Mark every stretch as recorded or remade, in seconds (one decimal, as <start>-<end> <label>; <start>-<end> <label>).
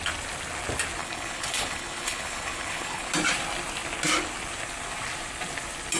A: 0.0-1.0 recorded; 1.0-3.1 remade; 3.1-6.0 recorded